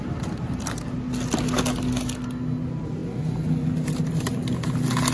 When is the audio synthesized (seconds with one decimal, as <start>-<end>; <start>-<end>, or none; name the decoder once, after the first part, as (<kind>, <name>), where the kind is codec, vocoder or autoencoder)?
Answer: none